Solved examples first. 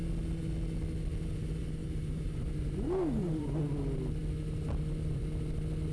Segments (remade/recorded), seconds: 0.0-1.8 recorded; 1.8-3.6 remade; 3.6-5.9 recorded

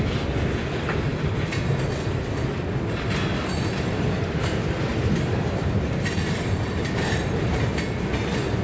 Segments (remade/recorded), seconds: 0.0-4.9 recorded; 4.9-8.2 remade; 8.2-8.6 recorded

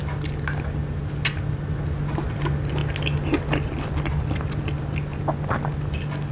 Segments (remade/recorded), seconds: 0.0-6.3 recorded

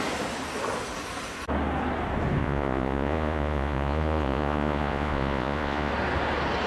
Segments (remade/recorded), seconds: 0.0-2.4 recorded; 2.4-5.9 remade; 5.9-6.7 recorded

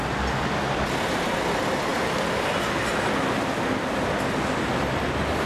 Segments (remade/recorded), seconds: 0.0-5.5 recorded

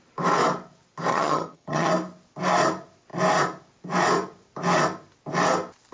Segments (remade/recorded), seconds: 0.0-1.1 recorded; 1.1-1.9 remade; 1.9-5.9 recorded

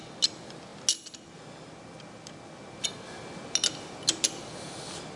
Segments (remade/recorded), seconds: 0.0-5.2 recorded

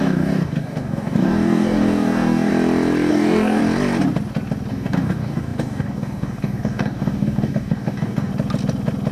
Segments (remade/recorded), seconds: 0.0-2.5 remade; 2.5-3.1 recorded; 3.1-3.6 remade; 3.6-4.7 recorded; 4.7-8.3 remade; 8.3-9.1 recorded